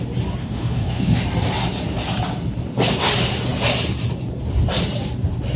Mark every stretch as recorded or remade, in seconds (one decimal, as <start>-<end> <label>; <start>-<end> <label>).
0.0-0.4 recorded; 0.4-1.2 remade; 1.2-5.6 recorded